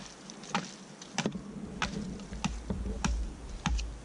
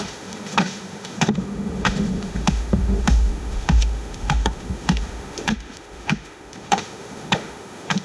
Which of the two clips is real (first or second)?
first